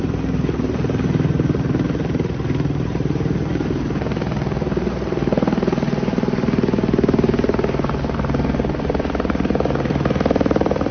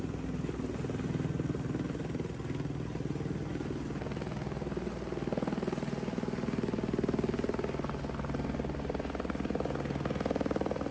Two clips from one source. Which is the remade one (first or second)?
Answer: first